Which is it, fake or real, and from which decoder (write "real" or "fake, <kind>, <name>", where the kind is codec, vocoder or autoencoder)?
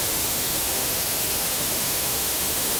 fake, autoencoder, DAC-VAE